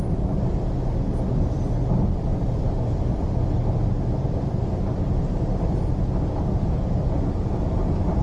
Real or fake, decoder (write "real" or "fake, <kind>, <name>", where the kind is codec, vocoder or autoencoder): real